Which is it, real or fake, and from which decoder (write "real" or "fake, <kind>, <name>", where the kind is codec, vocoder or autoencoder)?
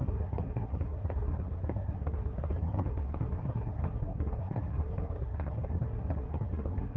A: fake, codec, SNAC